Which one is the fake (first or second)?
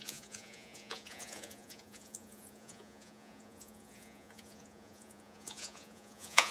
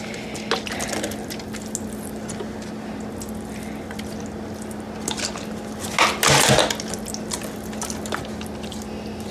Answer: first